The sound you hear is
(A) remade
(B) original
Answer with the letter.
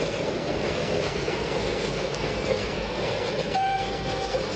A